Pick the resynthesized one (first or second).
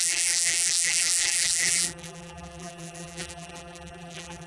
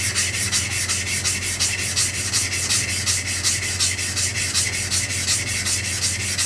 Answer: first